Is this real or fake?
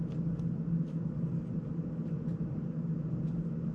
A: real